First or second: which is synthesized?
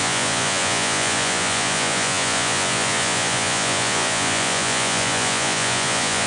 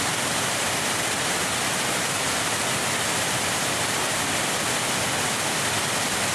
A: first